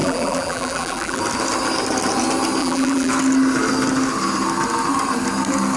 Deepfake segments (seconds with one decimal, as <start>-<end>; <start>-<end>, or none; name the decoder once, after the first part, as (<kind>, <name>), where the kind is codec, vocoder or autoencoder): 0.0-1.2 (vocoder, BigVGAN v2); 2.6-3.1